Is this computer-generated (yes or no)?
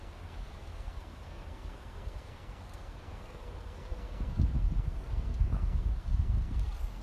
yes